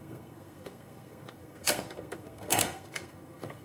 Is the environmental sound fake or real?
fake